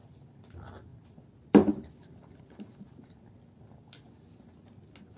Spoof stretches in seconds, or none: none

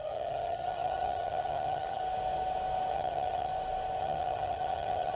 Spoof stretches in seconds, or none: 0.0-2.0 (vocoder, HiFi-GAN); 2.9-3.5; 4.0-5.2

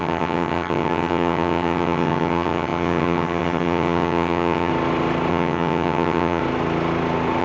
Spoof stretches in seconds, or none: 0.0-4.7 (vocoder, HiFi-GAN); 5.3-6.4

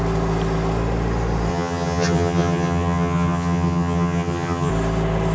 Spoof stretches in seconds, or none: 1.5-4.7 (vocoder, HiFi-GAN)

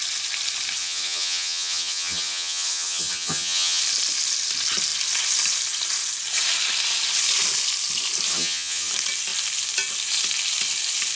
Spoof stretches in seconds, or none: 0.8-3.8 (vocoder, HiFi-GAN); 8.3-8.9

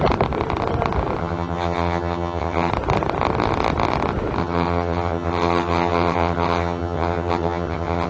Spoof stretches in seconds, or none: 1.2-2.7 (vocoder, HiFi-GAN); 4.4-8.1

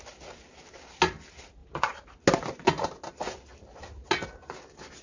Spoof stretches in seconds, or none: none

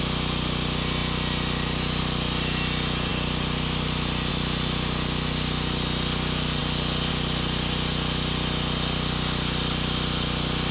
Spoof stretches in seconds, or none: none